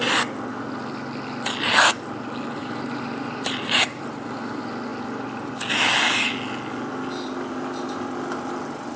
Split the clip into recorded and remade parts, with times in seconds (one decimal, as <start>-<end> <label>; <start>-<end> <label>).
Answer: 0.0-2.6 recorded; 2.6-4.5 remade; 4.5-9.0 recorded